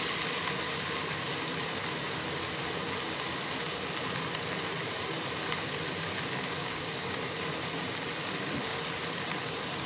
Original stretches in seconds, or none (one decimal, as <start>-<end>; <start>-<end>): 0.0-6.6; 7.4-9.9